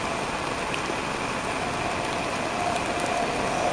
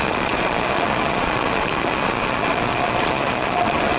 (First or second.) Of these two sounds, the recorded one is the first